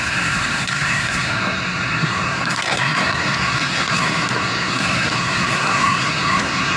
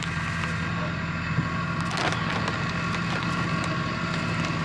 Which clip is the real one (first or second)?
second